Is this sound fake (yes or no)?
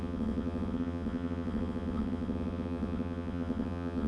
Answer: yes